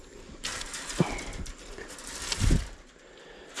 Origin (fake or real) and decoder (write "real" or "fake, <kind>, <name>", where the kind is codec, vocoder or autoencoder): real